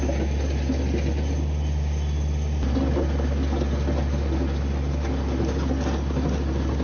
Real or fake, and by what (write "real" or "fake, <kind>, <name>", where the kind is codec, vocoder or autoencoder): real